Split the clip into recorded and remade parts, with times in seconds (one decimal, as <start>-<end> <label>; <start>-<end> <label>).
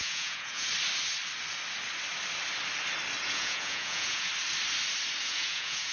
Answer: 0.0-0.7 remade; 0.7-3.3 recorded; 3.3-4.3 remade; 4.3-5.2 recorded; 5.2-5.9 remade